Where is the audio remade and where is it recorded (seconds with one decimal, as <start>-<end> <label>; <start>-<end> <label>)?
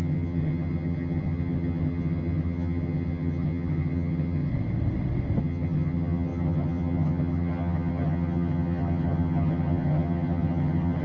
0.0-4.5 remade; 4.5-5.4 recorded; 5.4-11.0 remade